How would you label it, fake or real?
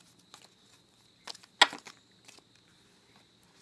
real